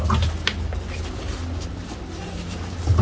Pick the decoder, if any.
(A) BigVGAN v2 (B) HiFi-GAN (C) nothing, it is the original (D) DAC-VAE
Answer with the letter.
C